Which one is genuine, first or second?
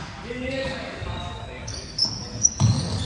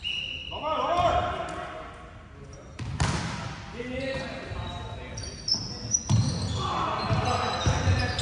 second